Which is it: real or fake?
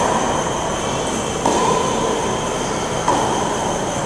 real